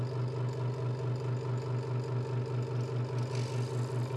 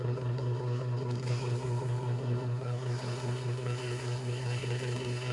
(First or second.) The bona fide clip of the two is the first